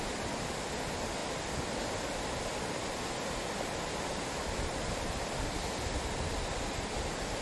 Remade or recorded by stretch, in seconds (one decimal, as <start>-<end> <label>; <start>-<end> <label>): 0.0-7.4 recorded